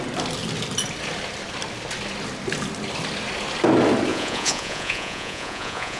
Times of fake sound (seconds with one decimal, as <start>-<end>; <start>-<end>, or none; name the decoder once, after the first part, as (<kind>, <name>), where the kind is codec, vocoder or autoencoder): 4.1-6.0 (vocoder, Vocos)